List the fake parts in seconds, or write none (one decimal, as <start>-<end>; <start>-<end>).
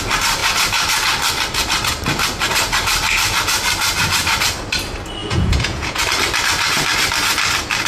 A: 5.2-6.0